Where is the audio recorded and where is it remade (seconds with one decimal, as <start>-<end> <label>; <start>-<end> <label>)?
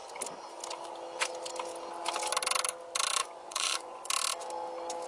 0.0-3.2 recorded; 3.2-4.1 remade; 4.1-5.1 recorded